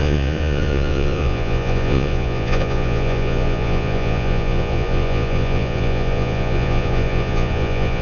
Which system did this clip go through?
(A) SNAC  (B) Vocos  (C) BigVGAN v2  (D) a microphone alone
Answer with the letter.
B